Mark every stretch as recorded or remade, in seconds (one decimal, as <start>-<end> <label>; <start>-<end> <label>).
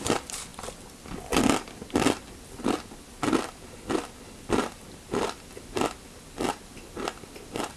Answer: 0.0-7.8 recorded